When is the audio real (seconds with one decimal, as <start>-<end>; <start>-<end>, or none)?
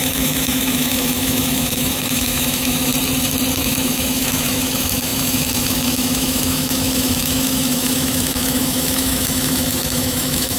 2.9-3.6